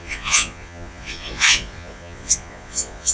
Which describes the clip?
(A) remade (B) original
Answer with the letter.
A